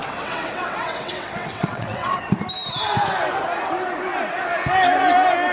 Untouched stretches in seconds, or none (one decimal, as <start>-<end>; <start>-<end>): 2.2-5.5